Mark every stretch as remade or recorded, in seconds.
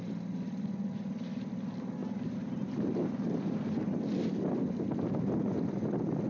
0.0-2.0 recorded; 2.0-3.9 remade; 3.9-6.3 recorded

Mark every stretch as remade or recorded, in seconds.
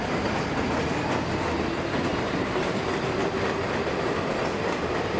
0.0-2.1 recorded; 2.1-3.7 remade; 3.7-5.2 recorded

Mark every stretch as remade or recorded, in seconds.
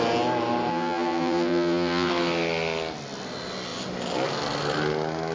0.0-0.7 recorded; 0.7-2.1 remade; 2.1-5.3 recorded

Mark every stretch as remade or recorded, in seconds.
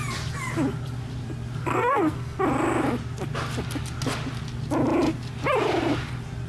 0.0-1.6 recorded; 1.6-2.4 remade; 2.4-6.5 recorded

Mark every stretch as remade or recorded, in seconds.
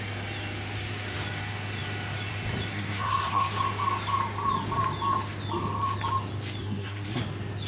0.0-2.7 recorded; 2.7-3.6 remade; 3.6-6.6 recorded; 6.6-7.2 remade; 7.2-7.7 recorded